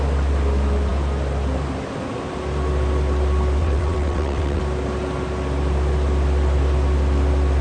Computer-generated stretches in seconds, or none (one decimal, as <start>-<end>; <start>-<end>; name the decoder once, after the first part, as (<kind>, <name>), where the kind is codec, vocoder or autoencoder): 3.6-4.6 (vocoder, WaveNeXt)